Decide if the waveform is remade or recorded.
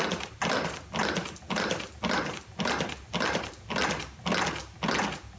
recorded